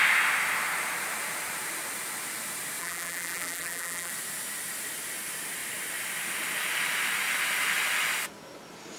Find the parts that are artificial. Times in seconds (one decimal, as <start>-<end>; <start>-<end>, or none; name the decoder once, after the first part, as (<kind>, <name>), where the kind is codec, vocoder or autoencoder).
2.8-4.1 (vocoder, BigVGAN v2)